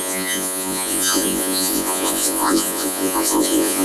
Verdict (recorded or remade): remade